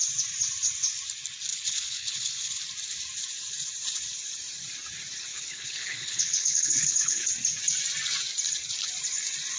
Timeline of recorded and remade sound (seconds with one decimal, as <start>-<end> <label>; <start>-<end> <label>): 0.0-1.5 recorded; 1.5-2.6 remade; 2.6-5.3 recorded; 5.3-7.3 remade; 7.3-9.6 recorded